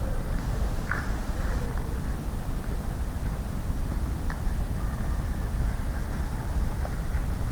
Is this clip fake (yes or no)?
yes